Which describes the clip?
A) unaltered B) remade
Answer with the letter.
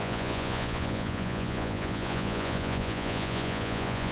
B